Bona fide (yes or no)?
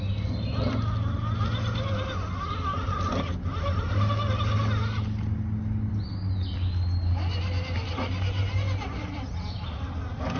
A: yes